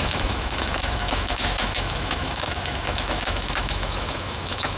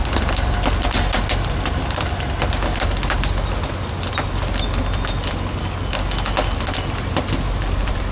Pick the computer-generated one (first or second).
first